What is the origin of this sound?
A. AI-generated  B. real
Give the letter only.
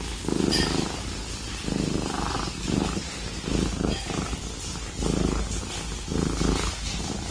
B